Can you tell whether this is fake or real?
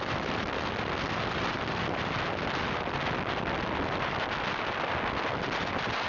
real